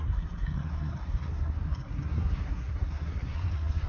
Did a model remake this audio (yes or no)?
yes